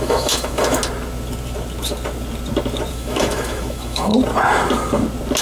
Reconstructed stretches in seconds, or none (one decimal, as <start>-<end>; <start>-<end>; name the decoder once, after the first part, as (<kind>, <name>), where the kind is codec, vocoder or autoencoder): 0.0-0.8 (autoencoder, DAC-VAE); 2.9-4.1